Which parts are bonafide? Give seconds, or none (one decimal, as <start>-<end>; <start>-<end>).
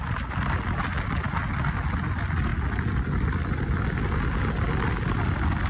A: 0.0-5.7